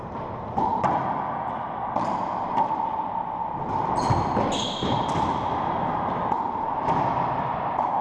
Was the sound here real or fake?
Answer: real